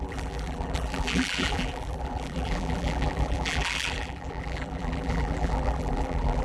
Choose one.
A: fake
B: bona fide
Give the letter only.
A